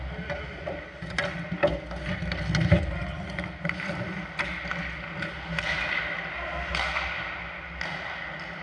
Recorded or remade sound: recorded